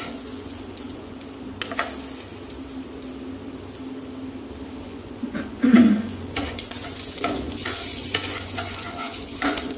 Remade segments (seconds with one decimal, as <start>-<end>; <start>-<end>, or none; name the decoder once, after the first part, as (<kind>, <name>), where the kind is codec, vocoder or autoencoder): 0.0-1.2 (vocoder, Vocos); 4.8-9.8